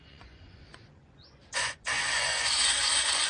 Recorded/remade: remade